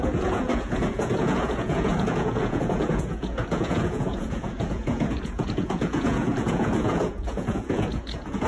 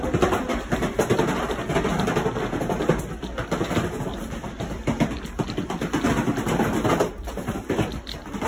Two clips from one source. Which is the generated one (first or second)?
first